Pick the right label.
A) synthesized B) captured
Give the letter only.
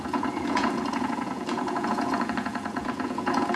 A